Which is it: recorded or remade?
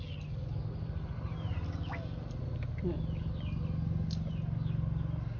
recorded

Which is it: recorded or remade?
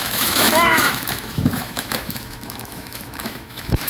remade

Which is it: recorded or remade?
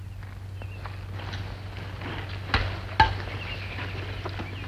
recorded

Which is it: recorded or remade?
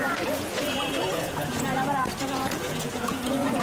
remade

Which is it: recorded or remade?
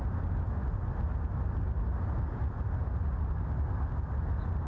recorded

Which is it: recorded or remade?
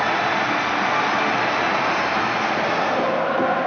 recorded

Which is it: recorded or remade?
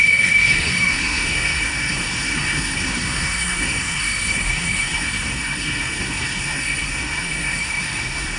remade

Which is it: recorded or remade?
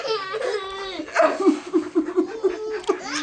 recorded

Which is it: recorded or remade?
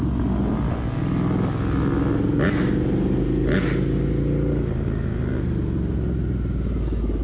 recorded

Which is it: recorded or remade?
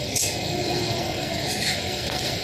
remade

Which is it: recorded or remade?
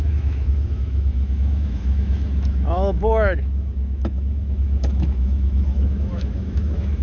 remade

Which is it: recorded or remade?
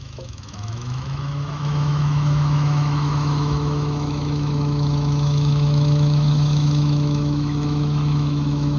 remade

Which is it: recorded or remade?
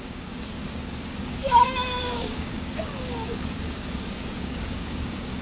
remade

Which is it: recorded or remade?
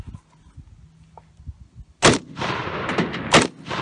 recorded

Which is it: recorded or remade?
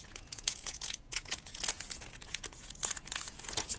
remade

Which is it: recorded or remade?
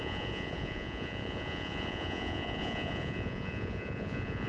remade